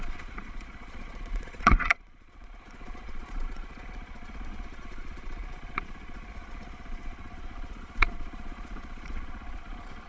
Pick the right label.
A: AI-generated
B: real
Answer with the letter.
A